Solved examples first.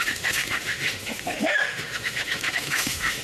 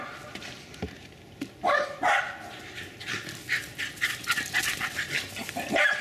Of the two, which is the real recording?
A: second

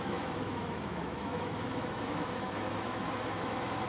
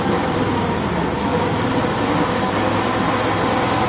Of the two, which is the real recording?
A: second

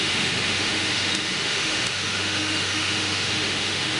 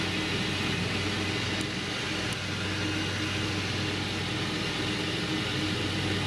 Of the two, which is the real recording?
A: second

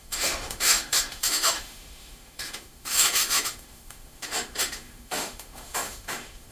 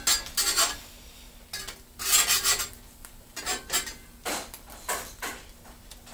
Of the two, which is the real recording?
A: second